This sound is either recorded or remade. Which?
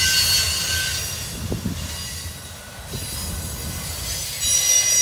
recorded